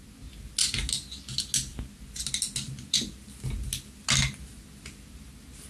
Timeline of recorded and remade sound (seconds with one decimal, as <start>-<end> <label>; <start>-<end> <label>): 0.0-5.7 recorded